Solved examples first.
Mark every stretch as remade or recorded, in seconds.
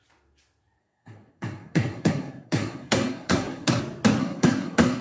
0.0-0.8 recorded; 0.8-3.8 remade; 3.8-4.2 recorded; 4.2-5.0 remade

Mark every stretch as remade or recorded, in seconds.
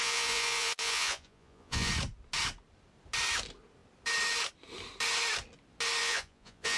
0.0-1.9 remade; 1.9-6.0 recorded; 6.0-6.8 remade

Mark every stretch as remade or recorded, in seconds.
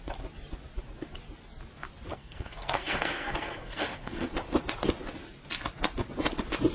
0.0-2.1 recorded; 2.1-4.3 remade; 4.3-6.7 recorded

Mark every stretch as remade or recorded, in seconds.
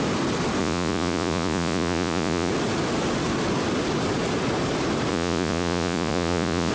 0.0-0.6 recorded; 0.6-2.5 remade; 2.5-5.1 recorded; 5.1-6.7 remade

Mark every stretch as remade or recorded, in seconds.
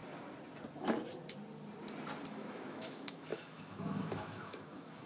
0.0-2.3 recorded; 2.3-5.1 remade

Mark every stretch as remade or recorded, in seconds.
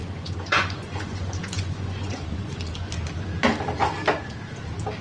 0.0-2.9 remade; 2.9-5.0 recorded